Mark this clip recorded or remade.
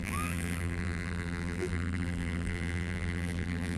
remade